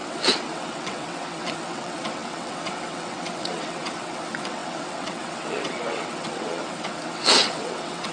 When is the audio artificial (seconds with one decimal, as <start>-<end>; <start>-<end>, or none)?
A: 0.0-8.1